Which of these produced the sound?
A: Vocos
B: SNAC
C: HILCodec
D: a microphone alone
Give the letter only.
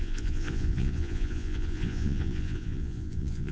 A